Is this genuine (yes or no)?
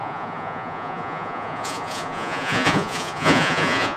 no